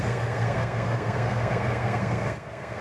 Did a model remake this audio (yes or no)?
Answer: yes